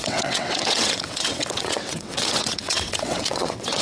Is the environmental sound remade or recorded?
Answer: remade